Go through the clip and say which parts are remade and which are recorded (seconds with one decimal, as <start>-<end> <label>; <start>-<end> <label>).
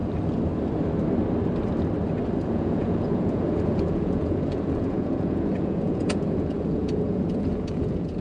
0.0-2.4 recorded; 2.4-8.2 remade